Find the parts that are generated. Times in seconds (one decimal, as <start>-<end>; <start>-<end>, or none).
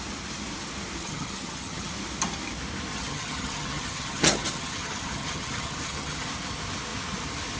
1.0-1.9; 2.9-6.3